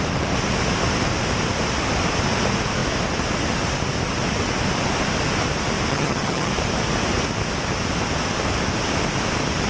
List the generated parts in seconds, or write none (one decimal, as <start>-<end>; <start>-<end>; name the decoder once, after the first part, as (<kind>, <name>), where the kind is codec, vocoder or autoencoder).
5.9-6.5 (vocoder, HiFi-GAN)